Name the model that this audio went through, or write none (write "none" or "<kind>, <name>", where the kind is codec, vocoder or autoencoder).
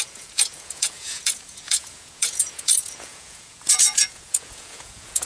vocoder, Vocos